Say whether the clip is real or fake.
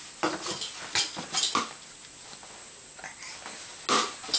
real